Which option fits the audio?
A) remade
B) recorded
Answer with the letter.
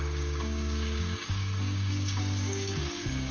A